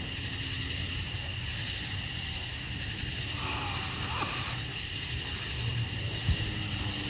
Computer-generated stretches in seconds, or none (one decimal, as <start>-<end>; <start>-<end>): 3.1-5.2; 5.7-6.2